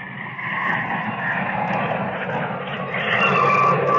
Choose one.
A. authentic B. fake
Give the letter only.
A